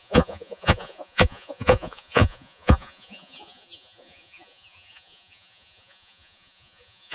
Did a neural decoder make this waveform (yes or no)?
yes